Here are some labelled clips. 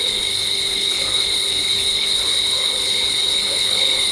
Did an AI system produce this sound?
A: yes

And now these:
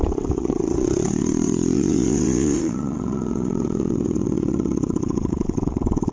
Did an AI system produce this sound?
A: yes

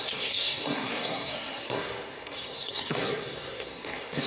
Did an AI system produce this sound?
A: yes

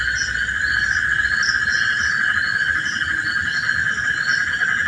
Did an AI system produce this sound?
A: no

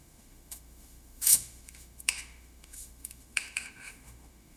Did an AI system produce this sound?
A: yes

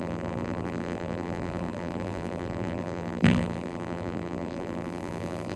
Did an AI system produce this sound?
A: yes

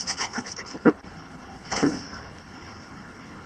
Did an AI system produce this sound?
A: yes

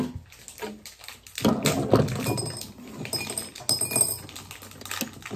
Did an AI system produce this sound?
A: no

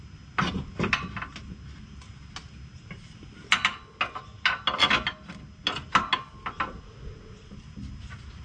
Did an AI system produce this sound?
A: no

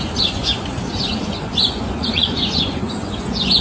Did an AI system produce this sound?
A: yes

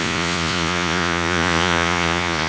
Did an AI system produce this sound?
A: yes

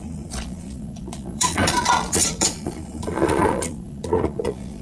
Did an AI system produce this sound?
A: yes